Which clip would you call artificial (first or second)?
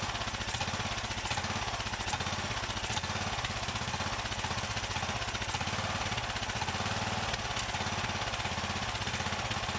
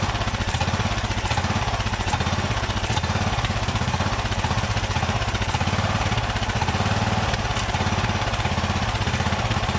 second